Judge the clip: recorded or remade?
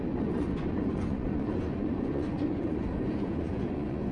remade